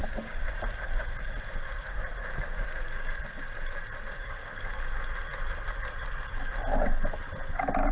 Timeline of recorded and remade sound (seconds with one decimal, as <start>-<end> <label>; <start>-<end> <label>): 0.0-0.5 remade; 0.5-2.2 recorded; 2.2-3.2 remade; 3.2-4.2 recorded; 4.2-5.1 remade; 5.1-7.9 recorded